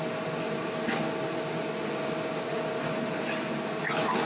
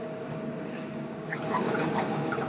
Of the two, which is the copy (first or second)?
second